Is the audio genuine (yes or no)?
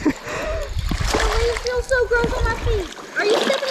yes